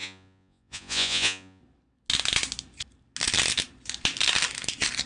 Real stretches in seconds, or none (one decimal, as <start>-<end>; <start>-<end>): 1.6-5.1